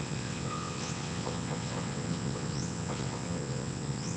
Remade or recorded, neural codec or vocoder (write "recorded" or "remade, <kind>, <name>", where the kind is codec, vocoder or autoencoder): remade, vocoder, WaveNeXt